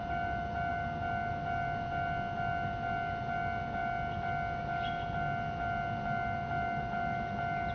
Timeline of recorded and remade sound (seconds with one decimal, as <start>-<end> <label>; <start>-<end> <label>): 0.0-7.7 recorded